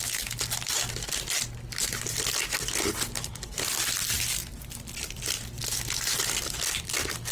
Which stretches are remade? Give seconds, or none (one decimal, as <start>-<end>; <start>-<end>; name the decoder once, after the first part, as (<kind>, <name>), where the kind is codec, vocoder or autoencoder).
none